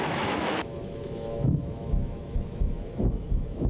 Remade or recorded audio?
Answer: remade